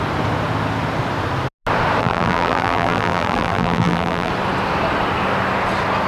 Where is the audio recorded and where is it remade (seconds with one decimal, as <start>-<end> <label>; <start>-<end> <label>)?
0.0-2.0 recorded; 2.0-4.3 remade; 4.3-6.1 recorded